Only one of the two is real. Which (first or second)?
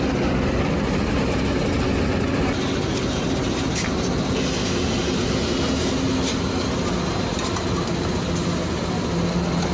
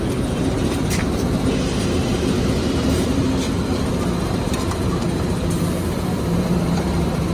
first